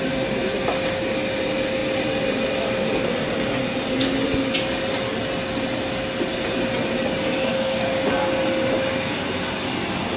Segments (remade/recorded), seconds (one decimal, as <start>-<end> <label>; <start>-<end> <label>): 0.0-7.5 recorded; 7.5-8.1 remade; 8.1-10.2 recorded